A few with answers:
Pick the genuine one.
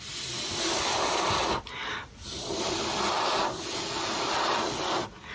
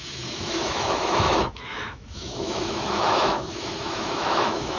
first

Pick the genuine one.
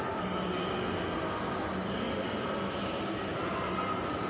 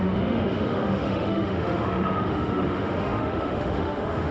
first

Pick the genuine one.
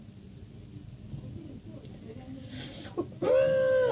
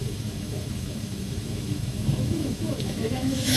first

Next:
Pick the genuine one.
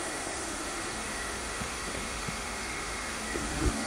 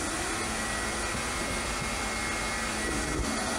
second